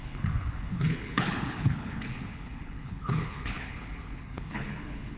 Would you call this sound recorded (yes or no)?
no